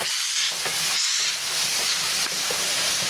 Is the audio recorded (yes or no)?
yes